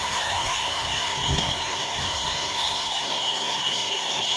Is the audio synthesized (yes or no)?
yes